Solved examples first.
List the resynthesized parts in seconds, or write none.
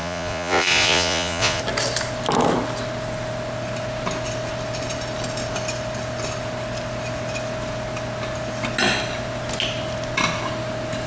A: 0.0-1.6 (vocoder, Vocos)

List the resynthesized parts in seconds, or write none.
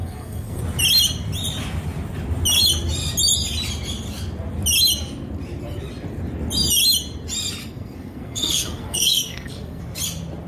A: 0.0-0.6 (codec, SNAC); 7.6-9.8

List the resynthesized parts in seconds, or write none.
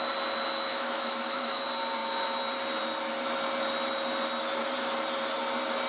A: 0.7-1.6 (autoencoder, DAC-VAE)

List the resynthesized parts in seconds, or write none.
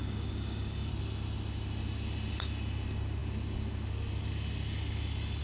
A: 0.0-0.9 (codec, DAC)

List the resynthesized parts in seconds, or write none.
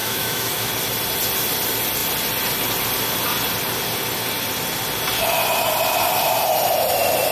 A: 0.0-0.7 (autoencoder, DAC-VAE)